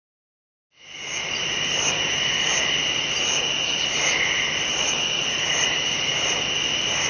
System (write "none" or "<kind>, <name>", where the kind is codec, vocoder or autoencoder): none